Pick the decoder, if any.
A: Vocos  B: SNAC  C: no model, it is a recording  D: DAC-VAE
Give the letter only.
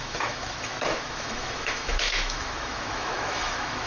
D